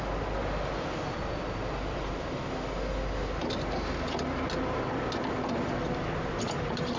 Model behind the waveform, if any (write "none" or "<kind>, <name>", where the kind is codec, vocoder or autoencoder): none